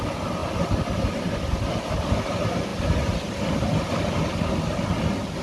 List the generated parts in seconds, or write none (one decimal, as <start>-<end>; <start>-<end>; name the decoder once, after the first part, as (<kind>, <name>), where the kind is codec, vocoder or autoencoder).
none